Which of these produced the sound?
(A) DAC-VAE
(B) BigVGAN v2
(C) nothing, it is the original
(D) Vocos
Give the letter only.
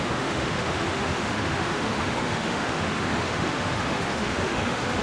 A